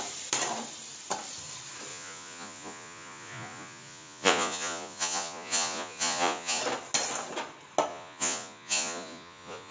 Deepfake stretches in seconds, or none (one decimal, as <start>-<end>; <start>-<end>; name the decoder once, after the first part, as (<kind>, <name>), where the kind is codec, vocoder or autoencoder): 1.9-6.6 (vocoder, Vocos); 7.9-9.7